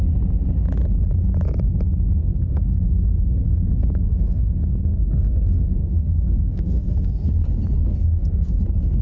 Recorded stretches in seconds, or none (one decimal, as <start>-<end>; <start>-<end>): 0.0-2.2; 7.1-7.9; 8.6-9.0